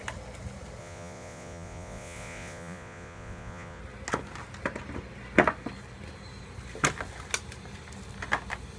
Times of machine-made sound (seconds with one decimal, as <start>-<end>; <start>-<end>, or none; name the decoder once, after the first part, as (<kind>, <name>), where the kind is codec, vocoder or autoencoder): 0.8-3.8 (vocoder, Vocos)